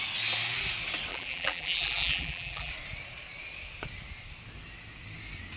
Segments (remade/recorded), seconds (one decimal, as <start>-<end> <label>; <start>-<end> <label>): 0.0-1.1 recorded; 1.1-2.7 remade; 2.7-5.6 recorded

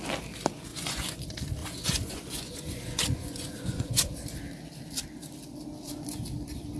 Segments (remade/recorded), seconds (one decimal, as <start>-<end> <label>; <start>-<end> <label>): 0.0-0.7 recorded; 0.7-1.2 remade; 1.2-1.6 recorded; 1.6-4.1 remade; 4.1-6.8 recorded

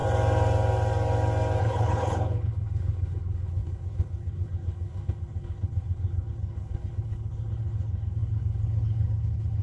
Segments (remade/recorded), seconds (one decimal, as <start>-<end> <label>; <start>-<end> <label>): 0.0-1.6 recorded; 1.6-9.6 remade

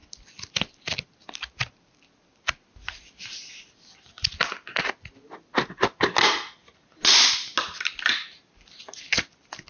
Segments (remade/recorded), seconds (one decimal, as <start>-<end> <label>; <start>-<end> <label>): 0.0-9.7 recorded

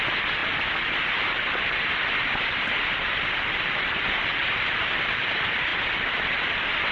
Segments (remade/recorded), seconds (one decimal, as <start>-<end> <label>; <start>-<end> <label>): 0.0-6.9 recorded

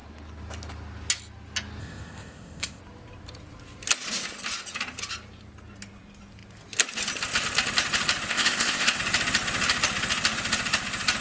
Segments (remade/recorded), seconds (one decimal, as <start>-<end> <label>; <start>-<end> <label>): 0.0-1.8 recorded; 1.8-2.8 remade; 2.8-8.3 recorded; 8.3-9.0 remade; 9.0-11.2 recorded